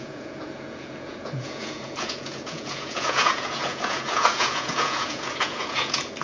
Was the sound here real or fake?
fake